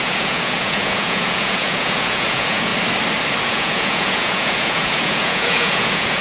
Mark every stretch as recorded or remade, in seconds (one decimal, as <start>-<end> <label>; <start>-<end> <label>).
0.0-2.7 remade; 2.7-3.5 recorded; 3.5-6.2 remade